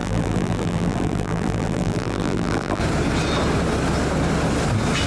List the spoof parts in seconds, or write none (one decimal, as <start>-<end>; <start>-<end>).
0.0-2.8

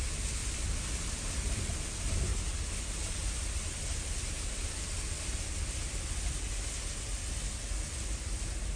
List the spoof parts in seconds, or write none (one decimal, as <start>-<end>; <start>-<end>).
0.4-1.7; 2.3-6.5

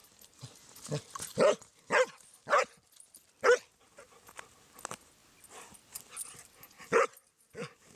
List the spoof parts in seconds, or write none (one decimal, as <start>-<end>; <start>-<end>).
none

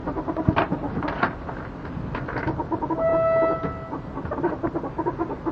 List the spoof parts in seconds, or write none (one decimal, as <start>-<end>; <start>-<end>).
0.0-1.3